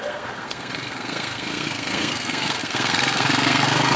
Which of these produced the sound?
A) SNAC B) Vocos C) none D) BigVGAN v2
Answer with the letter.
A